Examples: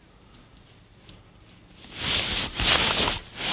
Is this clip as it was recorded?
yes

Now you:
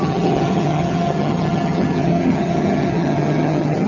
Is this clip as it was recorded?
no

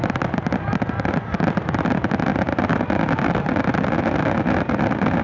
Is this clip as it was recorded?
yes